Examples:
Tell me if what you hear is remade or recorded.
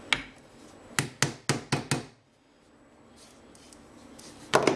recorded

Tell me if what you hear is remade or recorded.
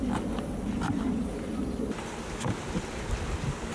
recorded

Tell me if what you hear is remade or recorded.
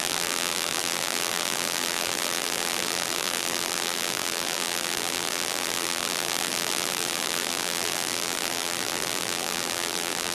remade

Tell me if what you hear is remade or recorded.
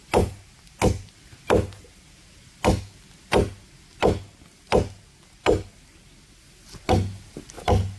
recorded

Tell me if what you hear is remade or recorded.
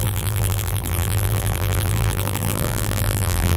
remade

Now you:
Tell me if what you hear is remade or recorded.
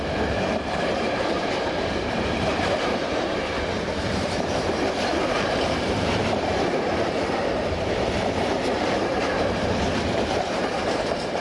remade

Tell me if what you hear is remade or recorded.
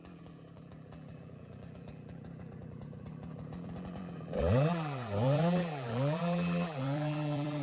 remade